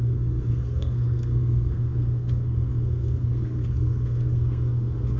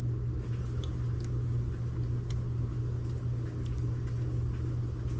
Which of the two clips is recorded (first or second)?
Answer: second